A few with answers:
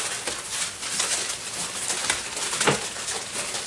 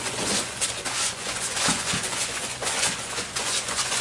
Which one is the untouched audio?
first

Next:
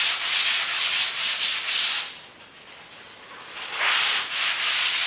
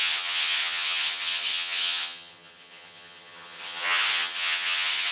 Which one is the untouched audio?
first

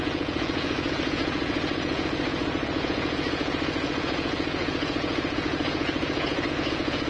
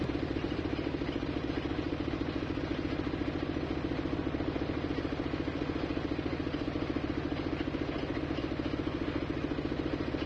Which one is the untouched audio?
second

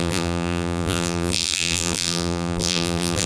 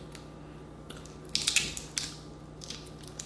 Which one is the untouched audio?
second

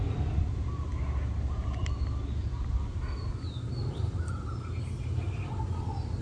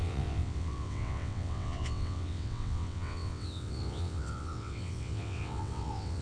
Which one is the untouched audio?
first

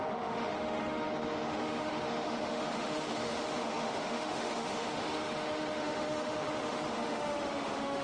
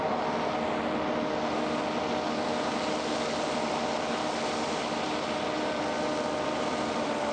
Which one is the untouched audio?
second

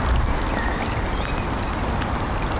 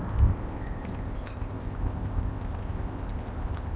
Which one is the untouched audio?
first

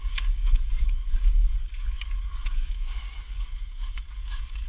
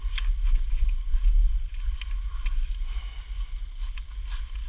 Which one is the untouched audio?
second